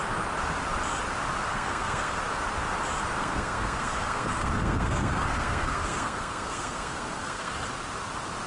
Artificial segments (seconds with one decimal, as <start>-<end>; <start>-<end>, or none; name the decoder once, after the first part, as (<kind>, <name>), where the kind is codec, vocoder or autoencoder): 1.5-2.2 (codec, SNAC); 3.2-7.5